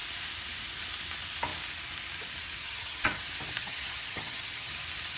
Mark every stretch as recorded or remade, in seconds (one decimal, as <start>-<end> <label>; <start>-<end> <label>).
0.0-2.6 recorded; 2.6-3.2 remade; 3.2-3.6 recorded; 3.6-4.7 remade; 4.7-5.2 recorded